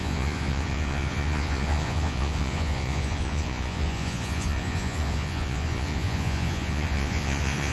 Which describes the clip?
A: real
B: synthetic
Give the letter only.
B